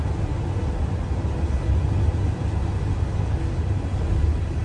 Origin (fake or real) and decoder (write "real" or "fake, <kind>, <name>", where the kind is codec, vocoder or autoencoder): real